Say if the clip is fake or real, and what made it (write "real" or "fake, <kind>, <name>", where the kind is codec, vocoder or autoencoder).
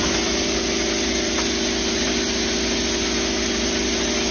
real